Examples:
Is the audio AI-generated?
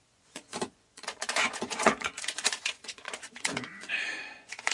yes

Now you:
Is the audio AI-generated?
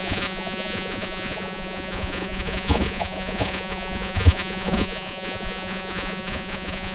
yes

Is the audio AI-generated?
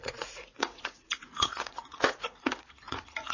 yes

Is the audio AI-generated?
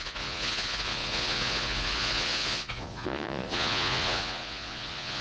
yes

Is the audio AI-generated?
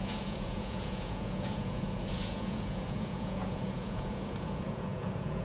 yes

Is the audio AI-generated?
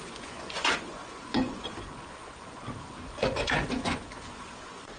yes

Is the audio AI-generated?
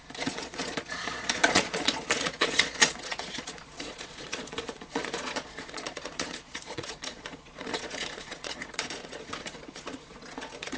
yes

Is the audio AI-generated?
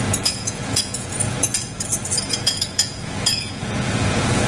yes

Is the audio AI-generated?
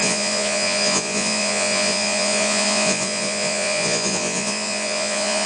yes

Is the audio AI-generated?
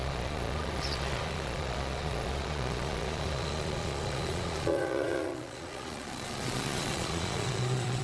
yes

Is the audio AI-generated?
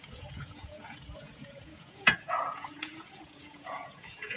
yes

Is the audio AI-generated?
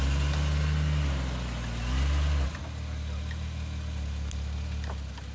no